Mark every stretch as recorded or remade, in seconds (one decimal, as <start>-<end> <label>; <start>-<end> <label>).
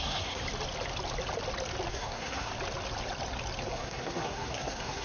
0.0-0.4 remade; 0.4-1.9 recorded; 1.9-2.5 remade; 2.5-3.7 recorded; 3.7-5.0 remade